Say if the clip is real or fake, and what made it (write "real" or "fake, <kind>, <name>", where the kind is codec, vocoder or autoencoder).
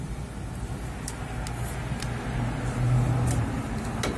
real